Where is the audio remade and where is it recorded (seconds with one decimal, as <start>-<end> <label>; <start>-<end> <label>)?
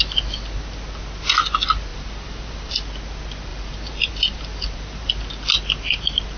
0.0-1.9 recorded; 1.9-2.7 remade; 2.7-3.5 recorded; 3.5-5.1 remade; 5.1-6.4 recorded